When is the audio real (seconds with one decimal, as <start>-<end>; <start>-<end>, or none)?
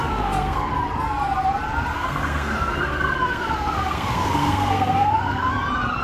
0.7-1.9; 5.5-6.0